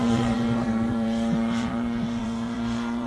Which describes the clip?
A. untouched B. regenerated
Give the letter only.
B